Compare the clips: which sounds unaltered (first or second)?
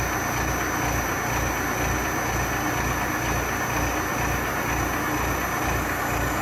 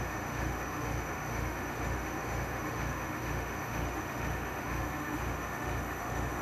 first